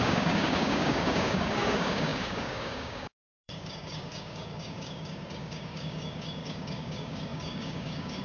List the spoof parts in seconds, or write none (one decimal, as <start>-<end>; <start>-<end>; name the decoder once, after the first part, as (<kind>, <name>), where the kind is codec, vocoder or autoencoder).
0.0-8.2 (codec, DAC)